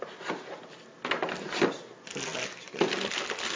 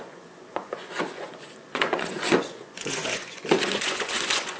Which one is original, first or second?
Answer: first